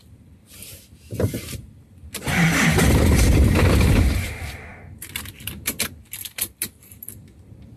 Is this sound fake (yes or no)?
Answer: yes